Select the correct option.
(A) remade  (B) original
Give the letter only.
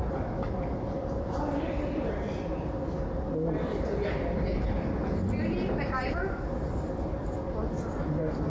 B